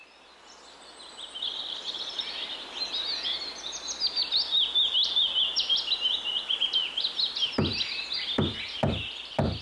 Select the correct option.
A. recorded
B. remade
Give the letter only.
A